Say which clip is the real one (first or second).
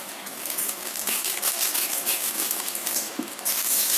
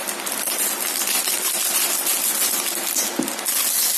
second